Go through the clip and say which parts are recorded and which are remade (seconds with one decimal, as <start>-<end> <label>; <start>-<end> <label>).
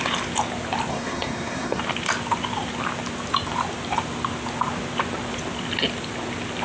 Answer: 0.0-0.9 recorded; 0.9-1.8 remade; 1.8-6.6 recorded